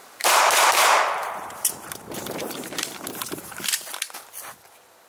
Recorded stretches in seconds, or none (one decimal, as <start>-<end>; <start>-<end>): 3.1-5.1